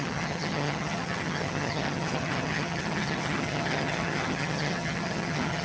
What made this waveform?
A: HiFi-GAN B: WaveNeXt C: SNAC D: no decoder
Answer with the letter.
A